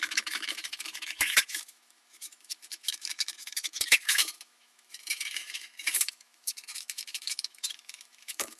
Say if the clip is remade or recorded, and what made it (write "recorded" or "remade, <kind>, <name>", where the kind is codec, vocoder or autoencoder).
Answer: remade, autoencoder, DAC-VAE